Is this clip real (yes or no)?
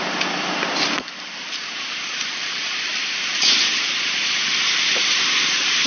yes